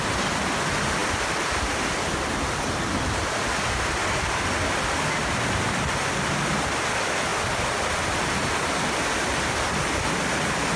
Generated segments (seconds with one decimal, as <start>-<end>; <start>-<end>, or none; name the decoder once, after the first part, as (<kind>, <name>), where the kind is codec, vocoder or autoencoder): none